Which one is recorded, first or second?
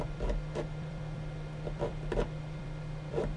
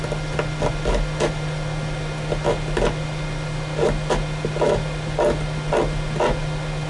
second